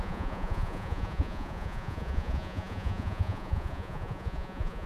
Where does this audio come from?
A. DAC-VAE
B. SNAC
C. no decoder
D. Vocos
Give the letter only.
D